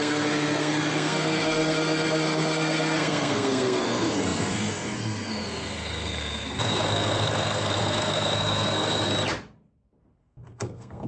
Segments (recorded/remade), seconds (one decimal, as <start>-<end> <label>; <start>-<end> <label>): 0.0-9.1 remade; 9.1-10.2 recorded; 10.2-11.1 remade